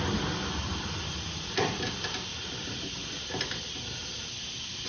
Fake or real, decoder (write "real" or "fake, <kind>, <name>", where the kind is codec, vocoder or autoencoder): real